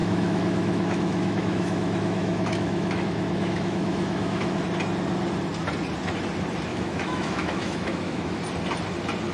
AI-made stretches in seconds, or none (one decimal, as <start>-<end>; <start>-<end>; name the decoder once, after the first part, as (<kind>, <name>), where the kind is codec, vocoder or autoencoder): 0.0-4.6 (autoencoder, DAC-VAE); 6.7-8.4